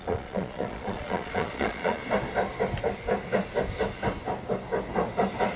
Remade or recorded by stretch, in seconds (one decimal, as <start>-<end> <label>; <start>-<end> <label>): 0.0-2.0 remade; 2.0-5.6 recorded